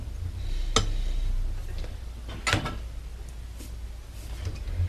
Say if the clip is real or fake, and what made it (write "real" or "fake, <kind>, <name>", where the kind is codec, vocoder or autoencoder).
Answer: real